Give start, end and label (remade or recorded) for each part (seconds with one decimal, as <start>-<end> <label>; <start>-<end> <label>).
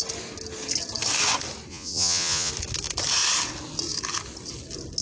0.0-1.7 recorded; 1.7-2.5 remade; 2.5-5.0 recorded